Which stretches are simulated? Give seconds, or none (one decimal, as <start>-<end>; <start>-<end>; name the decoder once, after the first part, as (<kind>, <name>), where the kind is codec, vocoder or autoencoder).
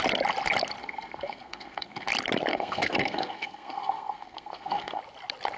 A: 0.8-2.1 (codec, SNAC); 2.5-5.0